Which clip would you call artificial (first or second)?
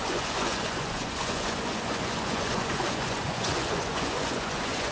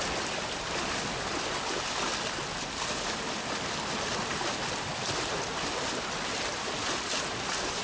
first